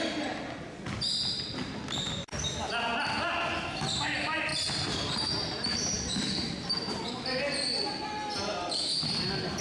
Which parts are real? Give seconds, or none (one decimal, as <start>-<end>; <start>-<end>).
0.0-4.5; 7.1-9.6